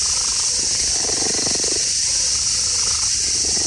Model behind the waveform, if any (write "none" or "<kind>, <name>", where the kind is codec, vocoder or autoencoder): none